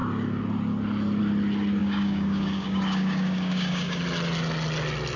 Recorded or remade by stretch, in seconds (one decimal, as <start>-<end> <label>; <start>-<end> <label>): 0.0-1.8 recorded; 1.8-4.0 remade; 4.0-5.2 recorded